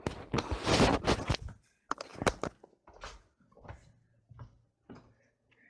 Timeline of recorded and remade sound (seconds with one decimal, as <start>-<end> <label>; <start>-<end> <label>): 0.0-5.7 recorded